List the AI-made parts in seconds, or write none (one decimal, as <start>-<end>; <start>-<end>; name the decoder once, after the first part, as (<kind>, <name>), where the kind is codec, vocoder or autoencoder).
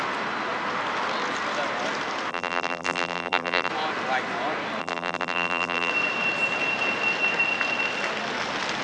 2.3-3.7 (vocoder, BigVGAN v2); 4.8-5.9